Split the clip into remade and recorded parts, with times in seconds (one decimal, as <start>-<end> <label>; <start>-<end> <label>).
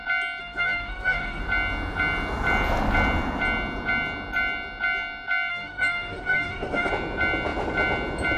0.0-0.4 recorded; 0.4-1.4 remade; 1.4-5.5 recorded; 5.5-6.9 remade; 6.9-8.4 recorded